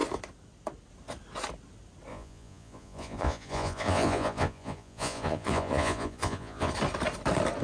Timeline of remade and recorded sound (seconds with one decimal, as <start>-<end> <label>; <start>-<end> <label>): 0.0-2.1 recorded; 2.1-6.7 remade; 6.7-7.6 recorded